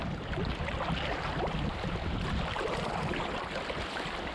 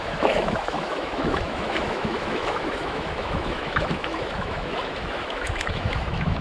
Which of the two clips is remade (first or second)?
second